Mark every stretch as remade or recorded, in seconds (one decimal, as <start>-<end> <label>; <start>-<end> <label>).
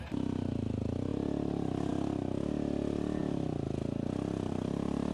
0.0-5.1 recorded